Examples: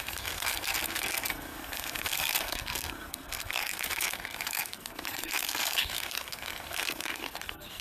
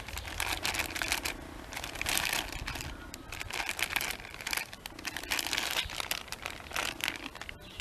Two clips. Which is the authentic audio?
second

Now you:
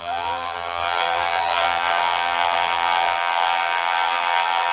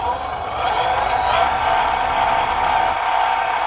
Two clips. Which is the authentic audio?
second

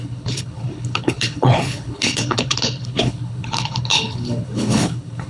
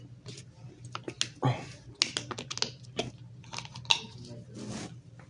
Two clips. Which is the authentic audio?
second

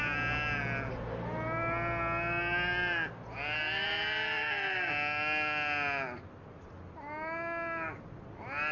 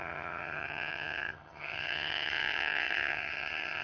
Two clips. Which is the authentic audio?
first